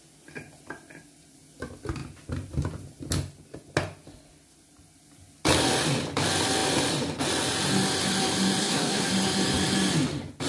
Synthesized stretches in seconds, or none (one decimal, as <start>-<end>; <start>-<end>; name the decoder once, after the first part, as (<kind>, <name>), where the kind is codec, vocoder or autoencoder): 8.6-9.1 (codec, SNAC)